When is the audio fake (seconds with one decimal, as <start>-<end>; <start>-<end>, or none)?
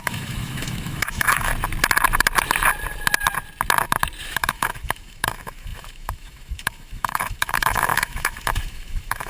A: 0.0-1.5; 4.2-9.3